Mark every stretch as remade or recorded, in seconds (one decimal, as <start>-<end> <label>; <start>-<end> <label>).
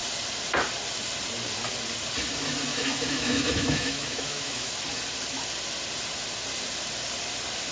0.0-2.7 recorded; 2.7-4.7 remade; 4.7-7.7 recorded